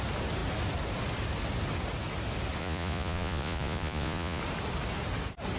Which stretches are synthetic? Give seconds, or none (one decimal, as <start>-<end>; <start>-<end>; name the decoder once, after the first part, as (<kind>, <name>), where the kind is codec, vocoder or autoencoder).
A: 2.6-4.4 (vocoder, Vocos)